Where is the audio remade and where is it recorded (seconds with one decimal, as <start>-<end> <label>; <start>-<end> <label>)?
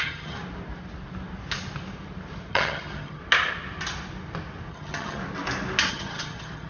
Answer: 0.0-0.4 remade; 0.4-2.5 recorded; 2.5-3.2 remade; 3.2-4.7 recorded; 4.7-5.2 remade; 5.2-5.9 recorded; 5.9-6.7 remade